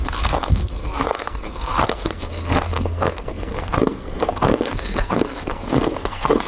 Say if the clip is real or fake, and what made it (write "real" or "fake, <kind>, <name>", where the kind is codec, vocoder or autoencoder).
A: fake, codec, SNAC